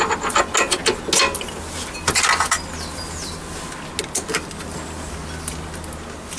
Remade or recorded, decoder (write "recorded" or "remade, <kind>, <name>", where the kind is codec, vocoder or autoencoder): recorded